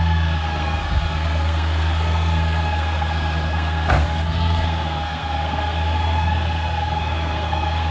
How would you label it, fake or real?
fake